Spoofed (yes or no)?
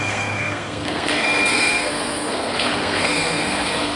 yes